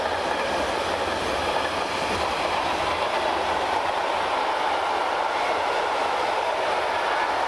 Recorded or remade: recorded